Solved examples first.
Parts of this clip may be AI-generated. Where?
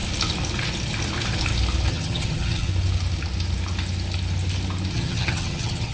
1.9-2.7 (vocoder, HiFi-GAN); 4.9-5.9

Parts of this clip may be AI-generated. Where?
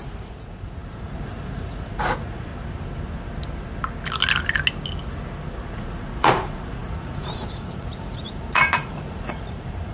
0.0-2.5 (vocoder, Vocos); 5.7-9.9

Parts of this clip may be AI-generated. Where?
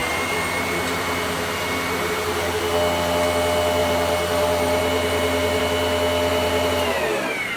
0.0-2.6 (vocoder, BigVGAN v2); 3.8-5.6; 6.3-7.6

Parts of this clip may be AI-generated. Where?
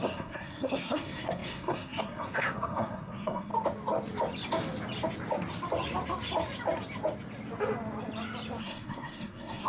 0.0-3.5 (codec, SNAC); 8.6-9.7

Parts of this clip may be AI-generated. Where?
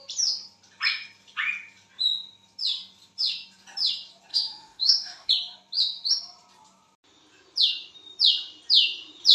4.3-5.3 (autoencoder, DAC-VAE)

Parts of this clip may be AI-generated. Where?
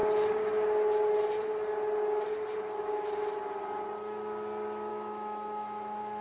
4.9-6.2 (autoencoder, DAC-VAE)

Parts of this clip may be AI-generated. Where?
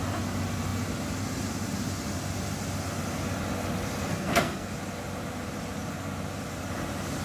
4.1-4.7 (codec, SNAC)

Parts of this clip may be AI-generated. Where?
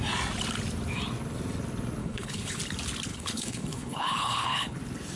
2.0-2.6 (codec, HILCodec); 3.1-4.8